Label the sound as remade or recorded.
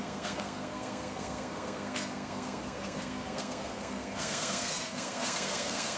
remade